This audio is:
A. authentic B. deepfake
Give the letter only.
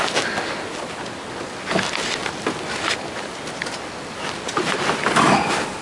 A